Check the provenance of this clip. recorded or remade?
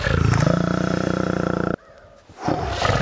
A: recorded